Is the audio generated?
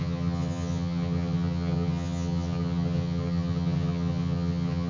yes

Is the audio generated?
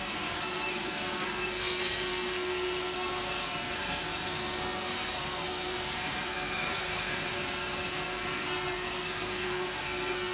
yes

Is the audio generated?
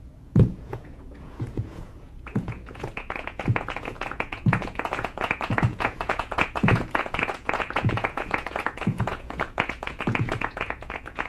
yes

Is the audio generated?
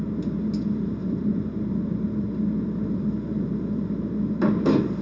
no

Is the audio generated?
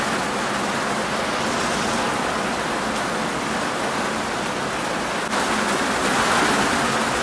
no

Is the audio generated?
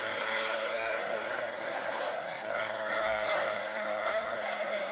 yes